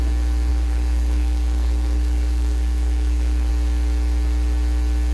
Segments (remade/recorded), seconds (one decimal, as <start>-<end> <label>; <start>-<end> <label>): 0.0-0.5 recorded; 0.5-3.5 remade; 3.5-5.1 recorded